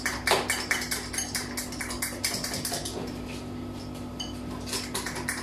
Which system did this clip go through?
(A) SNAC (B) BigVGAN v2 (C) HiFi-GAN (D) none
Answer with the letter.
B